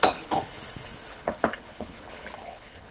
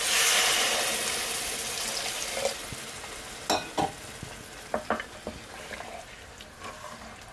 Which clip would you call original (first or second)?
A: second